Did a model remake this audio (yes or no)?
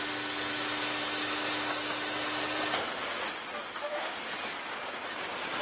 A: no